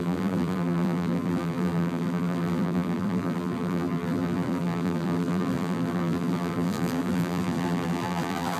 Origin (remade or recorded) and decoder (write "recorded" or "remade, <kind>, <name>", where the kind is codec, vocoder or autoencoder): remade, vocoder, BigVGAN v2